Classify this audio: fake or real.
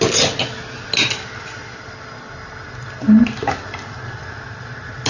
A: real